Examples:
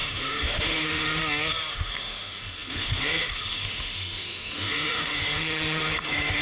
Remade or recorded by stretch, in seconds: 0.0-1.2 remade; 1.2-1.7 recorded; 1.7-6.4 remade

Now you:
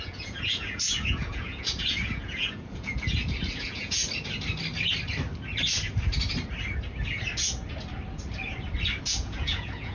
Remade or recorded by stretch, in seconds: 0.0-4.0 remade; 4.0-9.1 recorded; 9.1-9.9 remade

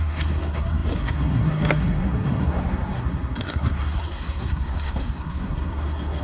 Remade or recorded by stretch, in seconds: 0.0-6.2 remade

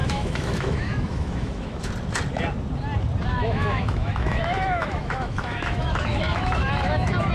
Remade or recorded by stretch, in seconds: 0.0-1.9 remade; 1.9-3.3 recorded; 3.3-7.3 remade

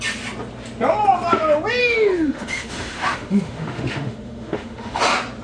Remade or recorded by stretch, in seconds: 0.0-1.8 recorded; 1.8-5.0 remade; 5.0-5.4 recorded

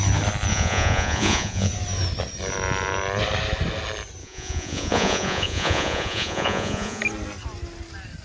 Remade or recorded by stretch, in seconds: 0.0-0.5 recorded; 0.5-1.7 remade; 1.7-4.2 recorded; 4.2-7.0 remade; 7.0-8.2 recorded

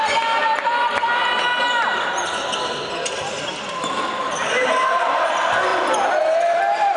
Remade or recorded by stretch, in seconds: 0.0-4.2 recorded; 4.2-5.3 remade; 5.3-5.7 recorded; 5.7-7.0 remade